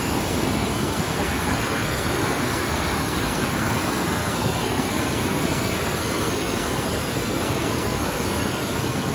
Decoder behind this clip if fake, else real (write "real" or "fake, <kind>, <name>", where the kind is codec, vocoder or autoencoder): fake, codec, SNAC